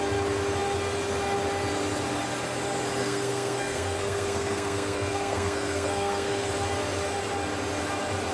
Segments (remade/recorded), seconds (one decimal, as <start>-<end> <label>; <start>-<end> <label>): 0.0-3.0 recorded; 3.0-6.5 remade; 6.5-8.3 recorded